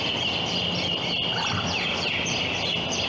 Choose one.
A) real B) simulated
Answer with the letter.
A